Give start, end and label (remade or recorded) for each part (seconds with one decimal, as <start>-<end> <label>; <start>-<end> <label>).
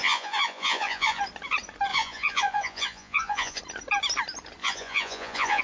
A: 0.0-1.2 remade; 1.2-1.9 recorded; 1.9-3.6 remade; 3.6-4.6 recorded; 4.6-5.6 remade